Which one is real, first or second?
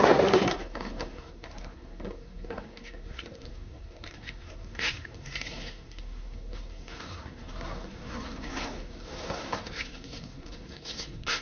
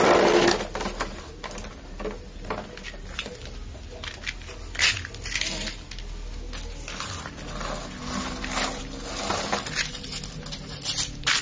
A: second